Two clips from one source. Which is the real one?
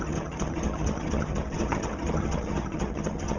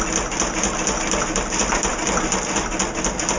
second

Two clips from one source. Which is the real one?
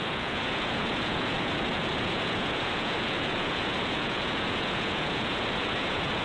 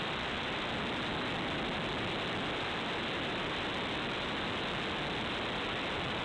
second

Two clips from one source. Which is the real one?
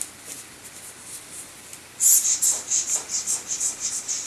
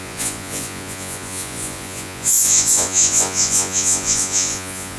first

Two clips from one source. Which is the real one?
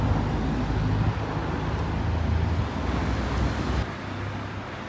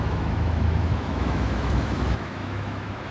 first